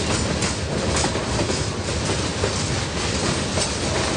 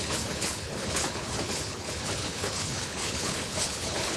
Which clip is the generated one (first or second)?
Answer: second